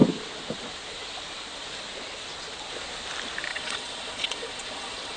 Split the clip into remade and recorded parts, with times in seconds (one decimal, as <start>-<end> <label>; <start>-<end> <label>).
0.0-3.5 recorded; 3.5-5.2 remade